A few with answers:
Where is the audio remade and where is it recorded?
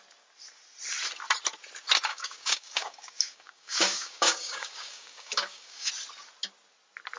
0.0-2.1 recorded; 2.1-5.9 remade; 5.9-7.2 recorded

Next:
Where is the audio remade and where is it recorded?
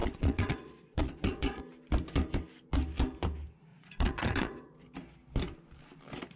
0.0-1.6 remade; 1.6-3.7 recorded; 3.7-4.7 remade; 4.7-6.4 recorded